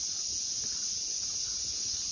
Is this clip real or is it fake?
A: real